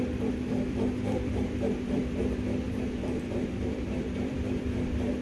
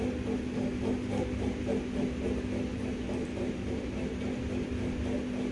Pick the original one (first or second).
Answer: second